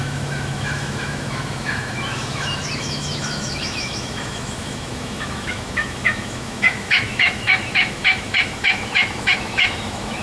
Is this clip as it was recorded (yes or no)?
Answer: no